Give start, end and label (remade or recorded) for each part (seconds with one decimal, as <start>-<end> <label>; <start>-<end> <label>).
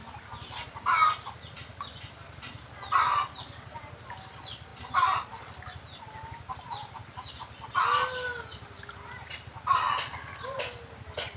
0.0-11.4 recorded